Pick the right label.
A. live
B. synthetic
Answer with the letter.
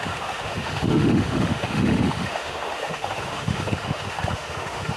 B